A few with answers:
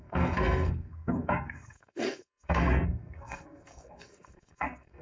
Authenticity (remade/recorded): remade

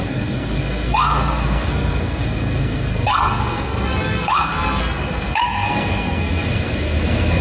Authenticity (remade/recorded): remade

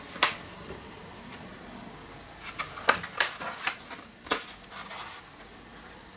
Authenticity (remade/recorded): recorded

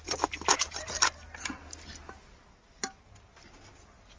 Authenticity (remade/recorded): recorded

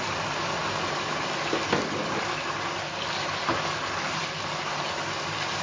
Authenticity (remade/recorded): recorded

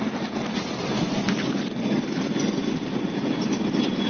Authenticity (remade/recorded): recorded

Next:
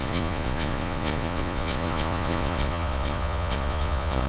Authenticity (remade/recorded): remade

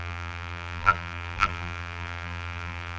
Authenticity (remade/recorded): remade